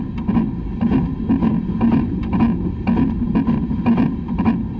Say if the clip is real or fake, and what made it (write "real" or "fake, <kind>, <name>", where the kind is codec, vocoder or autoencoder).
real